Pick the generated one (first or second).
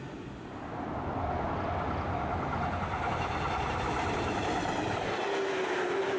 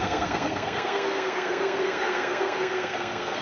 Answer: second